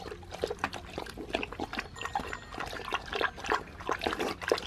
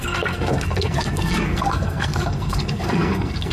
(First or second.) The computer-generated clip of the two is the second